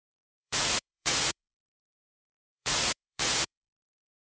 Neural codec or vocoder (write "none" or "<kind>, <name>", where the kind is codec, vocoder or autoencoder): vocoder, Vocos